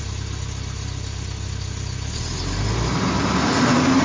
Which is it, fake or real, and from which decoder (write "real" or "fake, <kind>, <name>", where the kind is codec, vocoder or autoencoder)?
real